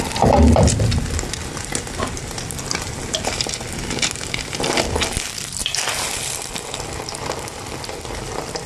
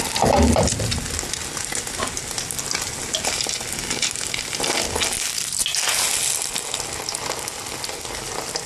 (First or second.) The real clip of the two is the second